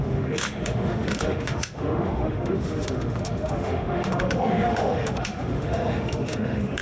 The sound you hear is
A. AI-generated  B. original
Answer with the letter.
A